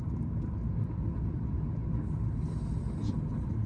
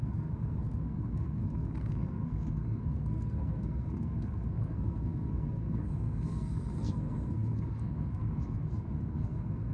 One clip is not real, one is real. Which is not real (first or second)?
second